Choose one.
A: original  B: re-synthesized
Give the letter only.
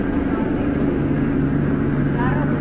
A